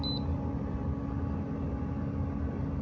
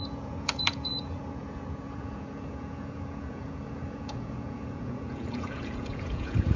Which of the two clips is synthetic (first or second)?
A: second